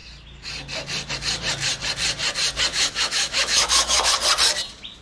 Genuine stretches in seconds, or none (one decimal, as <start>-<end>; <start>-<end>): 0.0-2.7; 4.1-5.0